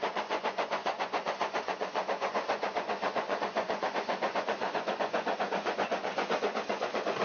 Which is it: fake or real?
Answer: fake